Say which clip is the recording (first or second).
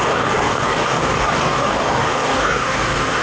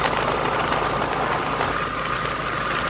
second